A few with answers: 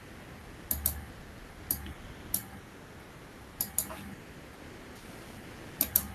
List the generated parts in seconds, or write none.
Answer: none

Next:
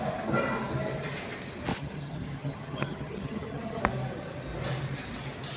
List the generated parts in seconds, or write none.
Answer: 1.7-3.8

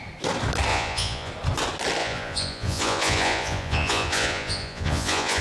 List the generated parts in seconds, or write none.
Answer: 0.7-1.3; 2.0-5.4

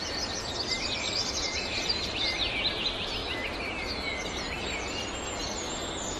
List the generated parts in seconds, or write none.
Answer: none

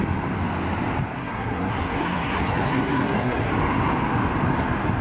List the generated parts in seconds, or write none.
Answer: 1.2-3.5

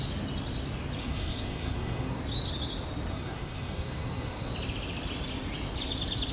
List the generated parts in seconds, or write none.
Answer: 1.0-2.2; 3.1-4.5